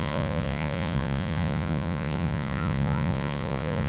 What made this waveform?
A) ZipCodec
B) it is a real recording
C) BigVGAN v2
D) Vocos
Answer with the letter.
D